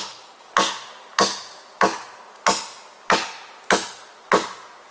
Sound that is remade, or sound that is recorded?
recorded